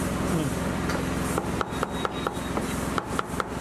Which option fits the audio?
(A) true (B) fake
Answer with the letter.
A